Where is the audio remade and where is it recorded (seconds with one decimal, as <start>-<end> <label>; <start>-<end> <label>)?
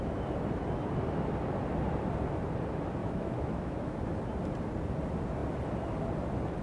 0.0-3.0 recorded; 3.0-4.0 remade; 4.0-6.6 recorded